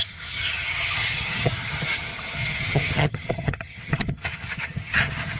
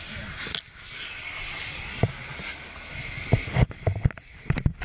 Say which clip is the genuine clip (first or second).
second